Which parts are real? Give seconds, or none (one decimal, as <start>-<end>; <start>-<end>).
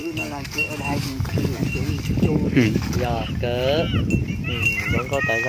3.3-5.5